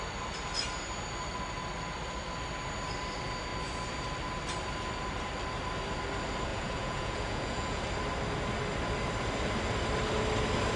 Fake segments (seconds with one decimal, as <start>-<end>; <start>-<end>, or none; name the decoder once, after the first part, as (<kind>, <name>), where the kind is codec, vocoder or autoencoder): 6.5-7.8 (vocoder, Vocos)